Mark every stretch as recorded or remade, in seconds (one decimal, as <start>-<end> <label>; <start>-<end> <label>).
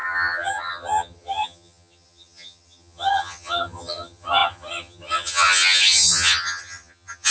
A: 0.0-7.3 remade